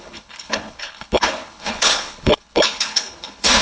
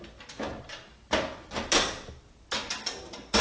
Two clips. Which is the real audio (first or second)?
second